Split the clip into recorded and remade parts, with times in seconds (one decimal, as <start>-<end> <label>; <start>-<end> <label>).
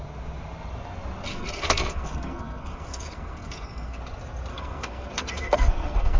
0.0-1.3 recorded; 1.3-4.0 remade; 4.0-4.5 recorded; 4.5-6.2 remade